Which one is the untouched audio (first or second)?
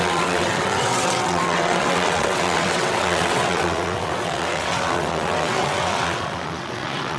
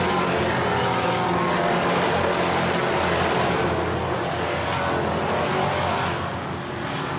second